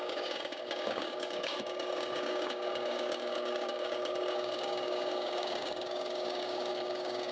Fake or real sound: fake